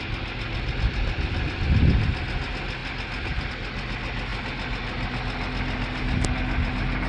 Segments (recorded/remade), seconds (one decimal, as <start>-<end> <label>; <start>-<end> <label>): 0.0-7.1 recorded